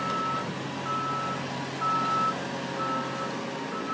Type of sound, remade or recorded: recorded